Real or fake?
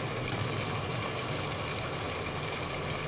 real